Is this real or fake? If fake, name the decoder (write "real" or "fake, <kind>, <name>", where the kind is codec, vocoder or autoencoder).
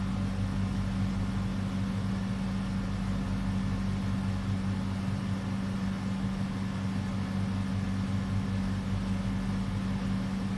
real